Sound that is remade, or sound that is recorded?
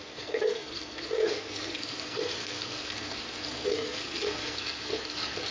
remade